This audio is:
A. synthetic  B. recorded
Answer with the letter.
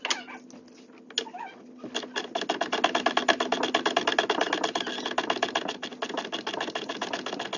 B